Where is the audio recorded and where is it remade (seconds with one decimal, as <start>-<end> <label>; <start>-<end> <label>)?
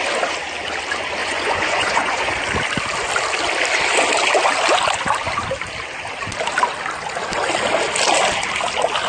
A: 0.0-1.2 recorded; 1.2-2.4 remade; 2.4-9.1 recorded